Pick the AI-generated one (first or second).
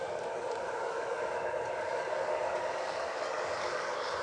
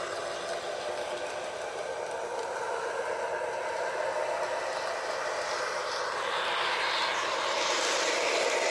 first